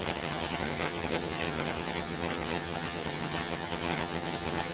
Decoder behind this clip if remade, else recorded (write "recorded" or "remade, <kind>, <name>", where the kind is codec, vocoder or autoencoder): remade, vocoder, HiFi-GAN